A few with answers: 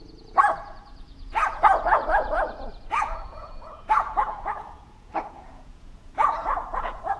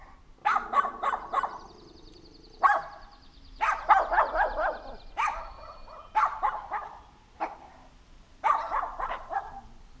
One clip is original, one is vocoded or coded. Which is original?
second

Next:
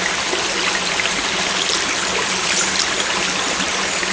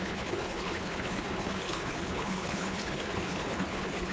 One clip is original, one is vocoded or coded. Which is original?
first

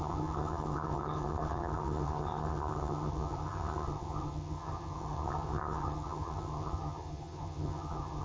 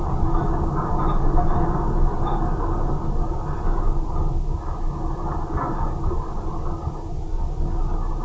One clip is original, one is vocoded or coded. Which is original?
second